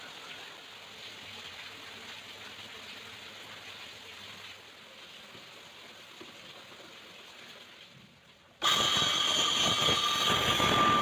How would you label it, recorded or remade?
recorded